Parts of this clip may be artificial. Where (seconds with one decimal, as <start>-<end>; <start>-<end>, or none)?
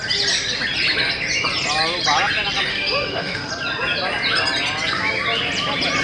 2.7-3.5